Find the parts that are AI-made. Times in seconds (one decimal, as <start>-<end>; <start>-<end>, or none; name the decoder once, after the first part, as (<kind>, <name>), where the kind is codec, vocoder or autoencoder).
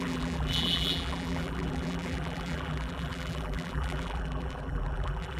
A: 0.0-5.4 (vocoder, BigVGAN v2)